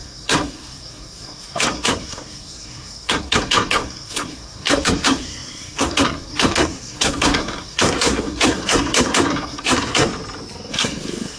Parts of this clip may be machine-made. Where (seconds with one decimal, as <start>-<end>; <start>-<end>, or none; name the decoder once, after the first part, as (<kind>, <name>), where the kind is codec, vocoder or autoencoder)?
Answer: 0.0-10.1 (codec, SNAC); 10.7-11.4

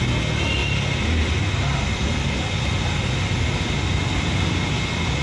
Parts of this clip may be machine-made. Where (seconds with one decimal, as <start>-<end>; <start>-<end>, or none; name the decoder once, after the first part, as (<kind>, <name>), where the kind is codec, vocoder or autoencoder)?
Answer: none

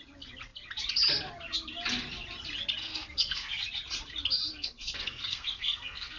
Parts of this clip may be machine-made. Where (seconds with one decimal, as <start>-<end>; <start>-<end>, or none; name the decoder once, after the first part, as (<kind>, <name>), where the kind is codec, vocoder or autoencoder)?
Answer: 2.8-3.5 (codec, SNAC); 4.5-6.2

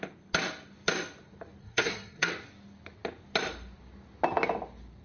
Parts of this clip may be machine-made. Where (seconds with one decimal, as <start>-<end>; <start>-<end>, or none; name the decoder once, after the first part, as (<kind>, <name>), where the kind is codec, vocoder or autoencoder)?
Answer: 1.6-2.3 (codec, SNAC)

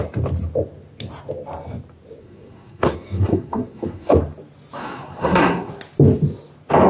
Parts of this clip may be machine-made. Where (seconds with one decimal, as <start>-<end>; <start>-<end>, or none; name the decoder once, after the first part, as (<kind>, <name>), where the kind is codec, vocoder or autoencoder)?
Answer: 2.2-4.1 (codec, SNAC); 4.8-5.7

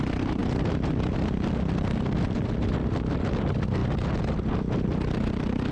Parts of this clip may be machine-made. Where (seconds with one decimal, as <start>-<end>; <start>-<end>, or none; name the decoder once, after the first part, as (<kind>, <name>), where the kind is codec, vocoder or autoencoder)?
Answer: none

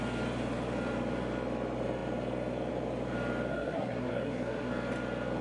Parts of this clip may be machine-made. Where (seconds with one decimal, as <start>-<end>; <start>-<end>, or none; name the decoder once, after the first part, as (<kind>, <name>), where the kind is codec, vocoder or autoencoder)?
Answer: 3.5-4.7 (codec, SNAC)

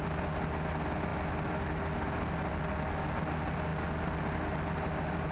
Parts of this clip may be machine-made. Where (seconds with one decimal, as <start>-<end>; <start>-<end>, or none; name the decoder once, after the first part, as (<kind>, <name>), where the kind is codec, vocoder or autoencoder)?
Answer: none